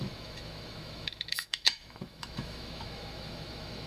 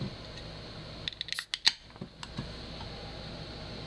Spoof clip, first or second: first